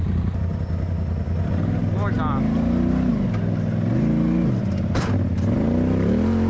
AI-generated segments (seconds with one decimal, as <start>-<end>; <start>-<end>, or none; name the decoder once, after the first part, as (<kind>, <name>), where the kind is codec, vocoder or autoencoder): none